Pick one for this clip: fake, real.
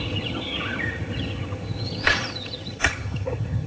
fake